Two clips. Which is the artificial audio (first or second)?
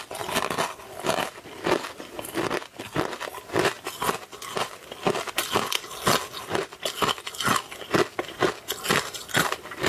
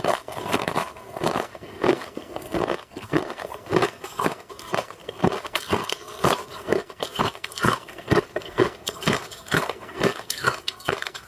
second